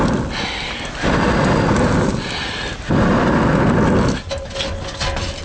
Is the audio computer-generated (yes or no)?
no